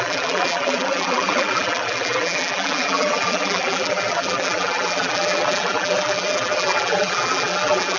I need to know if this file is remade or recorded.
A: remade